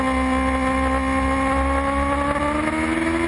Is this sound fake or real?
real